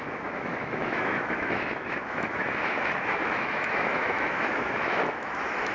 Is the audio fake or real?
fake